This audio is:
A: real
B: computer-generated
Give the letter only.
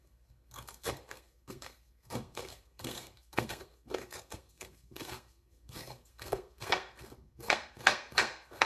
B